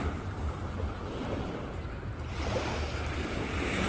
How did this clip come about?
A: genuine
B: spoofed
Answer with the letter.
A